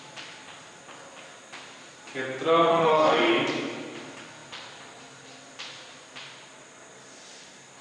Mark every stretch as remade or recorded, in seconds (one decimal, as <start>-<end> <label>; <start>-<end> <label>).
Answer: 0.0-2.7 recorded; 2.7-3.3 remade; 3.3-7.8 recorded